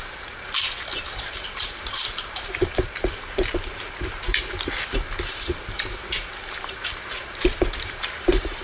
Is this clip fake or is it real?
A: fake